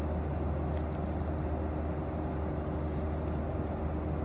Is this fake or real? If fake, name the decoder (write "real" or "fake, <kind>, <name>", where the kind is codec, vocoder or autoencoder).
real